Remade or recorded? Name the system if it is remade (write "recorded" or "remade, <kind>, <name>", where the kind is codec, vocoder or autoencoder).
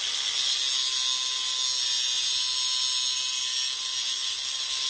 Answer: recorded